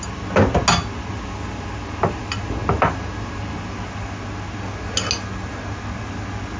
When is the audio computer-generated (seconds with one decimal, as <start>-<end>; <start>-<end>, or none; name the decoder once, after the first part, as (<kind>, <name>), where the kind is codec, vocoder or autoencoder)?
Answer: none